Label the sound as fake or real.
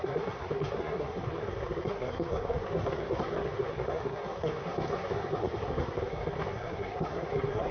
fake